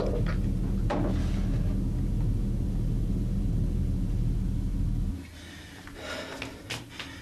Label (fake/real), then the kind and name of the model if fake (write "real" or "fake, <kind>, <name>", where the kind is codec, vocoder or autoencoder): real